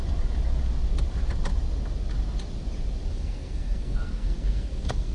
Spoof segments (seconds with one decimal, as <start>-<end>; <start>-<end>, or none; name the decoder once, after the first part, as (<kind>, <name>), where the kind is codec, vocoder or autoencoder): 3.1-5.1 (codec, SNAC)